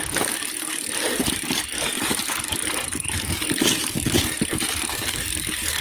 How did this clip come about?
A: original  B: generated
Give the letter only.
B